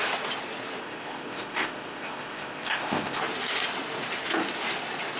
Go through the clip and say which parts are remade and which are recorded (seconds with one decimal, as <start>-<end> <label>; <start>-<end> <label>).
0.0-0.8 recorded; 0.8-3.2 remade; 3.2-5.2 recorded